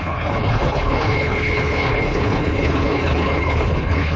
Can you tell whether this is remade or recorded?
remade